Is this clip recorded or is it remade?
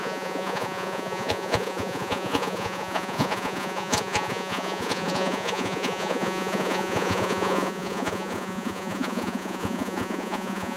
remade